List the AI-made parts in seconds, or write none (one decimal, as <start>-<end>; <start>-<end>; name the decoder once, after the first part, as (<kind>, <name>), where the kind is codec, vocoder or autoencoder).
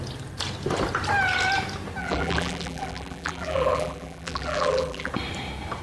2.0-5.1 (vocoder, BigVGAN v2)